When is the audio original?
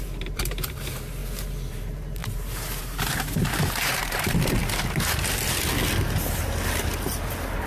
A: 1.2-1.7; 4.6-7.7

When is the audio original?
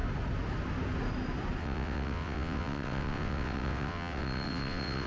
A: 0.0-1.6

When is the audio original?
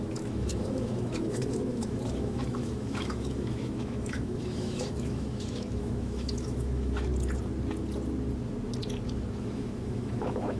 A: 7.1-9.4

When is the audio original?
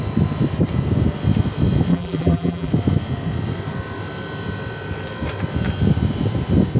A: 0.0-1.9; 2.7-6.8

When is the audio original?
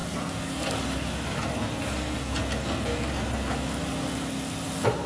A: 0.0-5.1